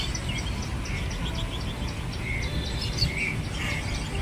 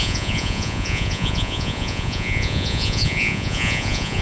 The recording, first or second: first